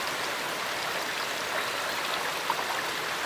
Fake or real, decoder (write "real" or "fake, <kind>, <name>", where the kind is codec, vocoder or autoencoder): real